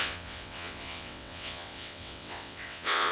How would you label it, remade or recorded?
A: remade